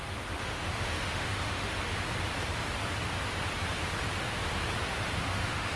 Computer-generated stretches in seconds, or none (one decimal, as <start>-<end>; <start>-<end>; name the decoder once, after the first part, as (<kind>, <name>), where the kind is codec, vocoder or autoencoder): 0.0-1.7 (autoencoder, DAC-VAE); 5.2-5.8